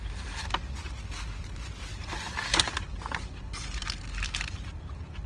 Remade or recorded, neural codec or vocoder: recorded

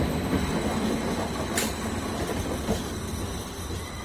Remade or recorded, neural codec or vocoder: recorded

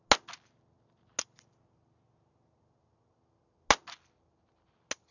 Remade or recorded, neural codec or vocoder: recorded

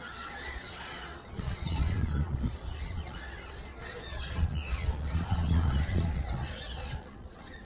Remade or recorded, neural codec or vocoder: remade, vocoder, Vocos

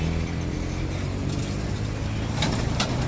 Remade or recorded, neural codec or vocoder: remade, vocoder, BigVGAN v2